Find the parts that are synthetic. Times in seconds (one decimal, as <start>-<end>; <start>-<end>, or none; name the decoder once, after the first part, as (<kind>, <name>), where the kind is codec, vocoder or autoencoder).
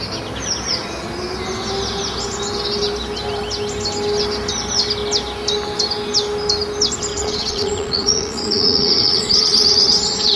7.1-10.4 (vocoder, Vocos)